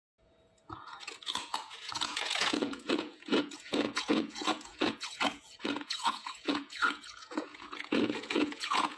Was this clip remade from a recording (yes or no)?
yes